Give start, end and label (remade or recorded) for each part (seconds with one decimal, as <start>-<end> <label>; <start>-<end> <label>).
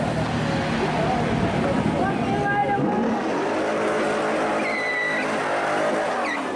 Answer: 0.0-6.6 recorded